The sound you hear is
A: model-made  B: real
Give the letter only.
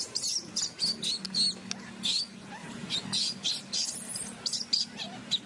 B